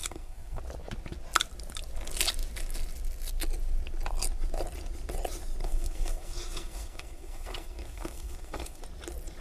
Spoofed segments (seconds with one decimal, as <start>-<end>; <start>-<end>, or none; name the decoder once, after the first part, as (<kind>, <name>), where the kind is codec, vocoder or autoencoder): 0.0-0.6 (codec, SNAC); 5.6-8.8